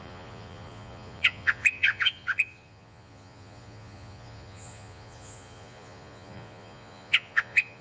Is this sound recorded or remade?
remade